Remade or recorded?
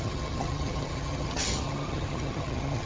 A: remade